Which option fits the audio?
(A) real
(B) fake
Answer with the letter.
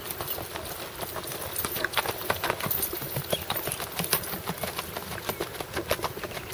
A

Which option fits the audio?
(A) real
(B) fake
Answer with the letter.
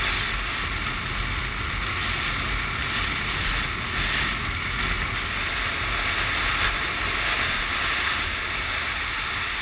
A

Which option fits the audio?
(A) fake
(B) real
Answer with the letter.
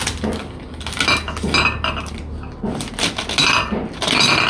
B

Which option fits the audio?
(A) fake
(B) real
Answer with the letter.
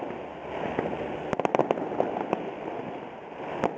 B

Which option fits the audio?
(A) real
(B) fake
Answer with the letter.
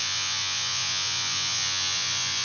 B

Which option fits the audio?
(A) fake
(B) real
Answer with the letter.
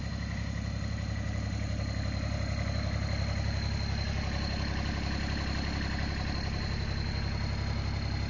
B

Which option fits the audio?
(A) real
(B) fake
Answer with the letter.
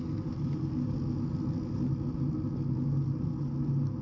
A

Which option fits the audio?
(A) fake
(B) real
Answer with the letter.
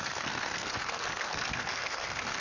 A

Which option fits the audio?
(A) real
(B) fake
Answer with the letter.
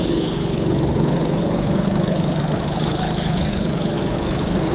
B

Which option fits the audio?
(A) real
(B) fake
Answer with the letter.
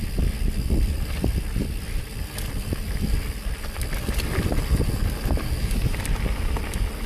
A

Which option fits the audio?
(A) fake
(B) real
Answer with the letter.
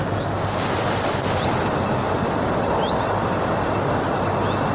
B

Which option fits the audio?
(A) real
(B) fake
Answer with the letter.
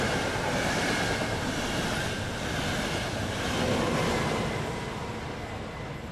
A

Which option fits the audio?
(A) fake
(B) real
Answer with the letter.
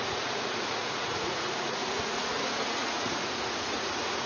A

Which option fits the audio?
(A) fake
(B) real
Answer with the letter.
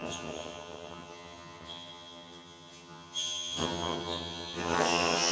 A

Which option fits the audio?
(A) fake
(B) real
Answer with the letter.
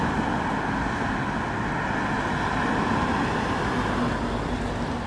B